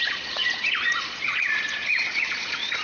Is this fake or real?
fake